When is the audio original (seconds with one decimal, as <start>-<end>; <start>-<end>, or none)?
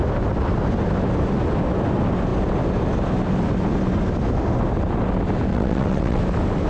0.0-5.5; 6.2-6.7